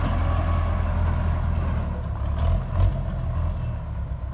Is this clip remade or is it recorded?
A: recorded